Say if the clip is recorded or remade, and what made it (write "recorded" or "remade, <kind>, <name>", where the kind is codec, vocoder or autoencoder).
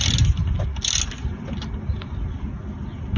recorded